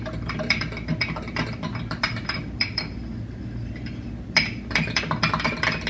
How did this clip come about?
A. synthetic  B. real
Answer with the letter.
B